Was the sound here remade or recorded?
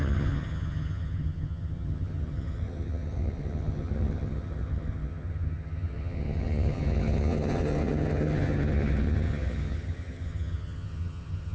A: remade